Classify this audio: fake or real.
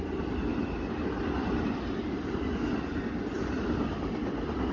real